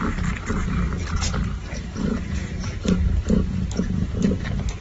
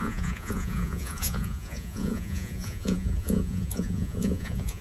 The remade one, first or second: second